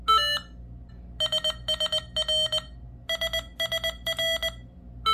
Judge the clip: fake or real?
real